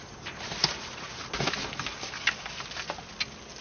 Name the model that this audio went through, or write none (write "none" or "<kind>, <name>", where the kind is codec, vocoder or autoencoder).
none